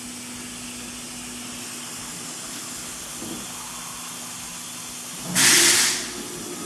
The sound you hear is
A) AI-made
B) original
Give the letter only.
B